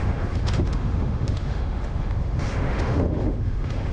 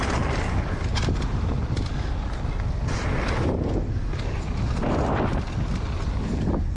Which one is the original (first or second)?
second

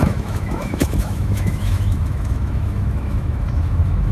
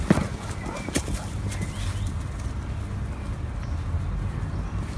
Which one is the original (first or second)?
second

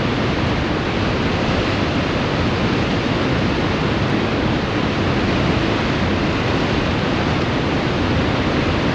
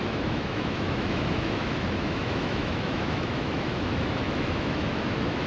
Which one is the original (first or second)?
first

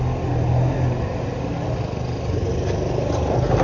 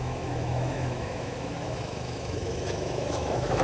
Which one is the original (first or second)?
first